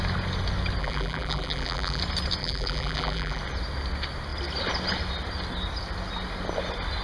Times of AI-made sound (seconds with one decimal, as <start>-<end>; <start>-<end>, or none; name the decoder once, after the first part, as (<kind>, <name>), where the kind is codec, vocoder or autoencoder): 0.8-2.0 (vocoder, BigVGAN v2); 2.4-3.4